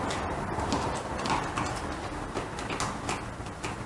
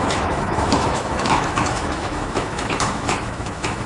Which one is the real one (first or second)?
first